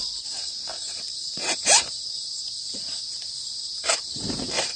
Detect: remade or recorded remade